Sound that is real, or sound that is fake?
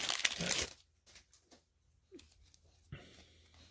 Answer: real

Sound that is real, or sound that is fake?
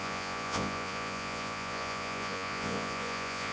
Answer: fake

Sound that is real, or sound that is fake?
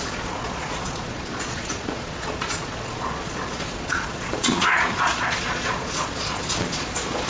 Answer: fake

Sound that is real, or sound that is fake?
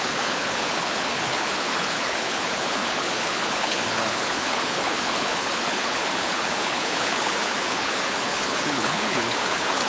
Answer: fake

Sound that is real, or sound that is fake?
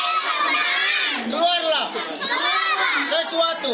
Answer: real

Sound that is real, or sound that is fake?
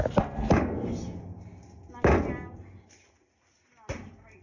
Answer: real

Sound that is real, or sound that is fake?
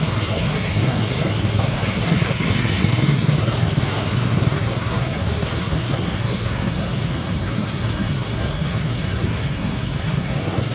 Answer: fake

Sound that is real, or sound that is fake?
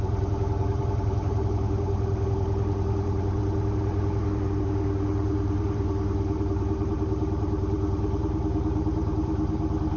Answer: fake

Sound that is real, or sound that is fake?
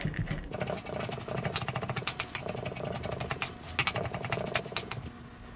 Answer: real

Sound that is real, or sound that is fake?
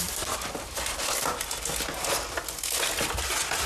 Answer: real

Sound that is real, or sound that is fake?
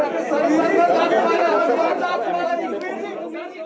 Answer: real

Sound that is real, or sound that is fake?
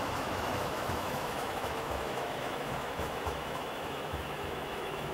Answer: fake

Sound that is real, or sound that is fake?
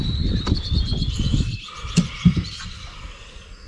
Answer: real